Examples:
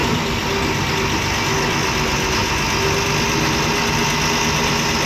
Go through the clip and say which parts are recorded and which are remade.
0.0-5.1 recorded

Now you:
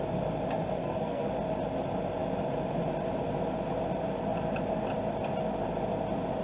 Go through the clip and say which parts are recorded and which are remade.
0.0-0.8 recorded; 0.8-1.3 remade; 1.3-6.4 recorded

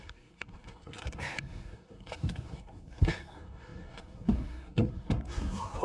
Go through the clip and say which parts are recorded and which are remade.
0.0-5.8 remade

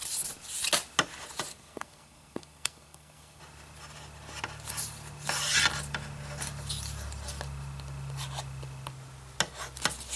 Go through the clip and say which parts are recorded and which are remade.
0.0-1.5 recorded; 1.5-3.4 remade; 3.4-10.2 recorded

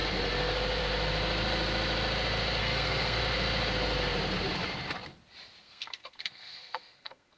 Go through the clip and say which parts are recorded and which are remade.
0.0-2.6 recorded; 2.6-3.2 remade; 3.2-5.6 recorded; 5.6-7.4 remade

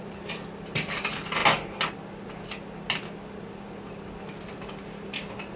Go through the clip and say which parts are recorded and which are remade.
0.0-5.6 recorded

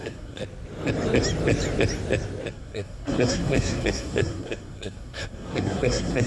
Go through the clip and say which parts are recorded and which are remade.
0.0-0.4 remade; 0.4-2.5 recorded; 2.5-6.3 remade